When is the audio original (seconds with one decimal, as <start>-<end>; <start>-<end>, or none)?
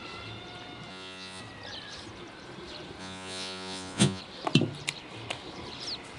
0.0-0.9; 1.4-3.0; 4.2-6.2